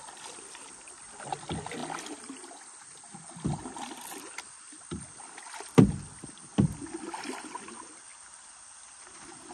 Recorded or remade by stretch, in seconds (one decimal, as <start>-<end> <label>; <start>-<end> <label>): 0.0-9.5 recorded